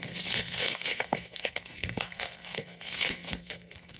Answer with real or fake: fake